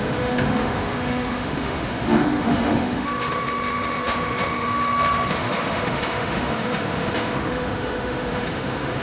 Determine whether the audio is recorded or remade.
remade